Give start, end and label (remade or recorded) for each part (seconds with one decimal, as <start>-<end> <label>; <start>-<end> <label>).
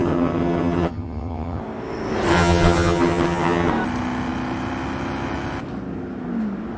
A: 0.0-1.6 remade; 1.6-2.3 recorded; 2.3-3.7 remade; 3.7-6.8 recorded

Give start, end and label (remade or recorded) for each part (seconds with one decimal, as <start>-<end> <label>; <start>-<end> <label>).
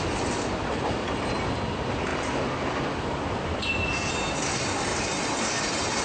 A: 0.0-6.0 recorded